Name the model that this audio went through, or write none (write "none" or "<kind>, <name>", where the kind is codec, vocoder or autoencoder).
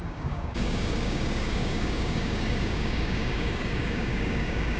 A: codec, DAC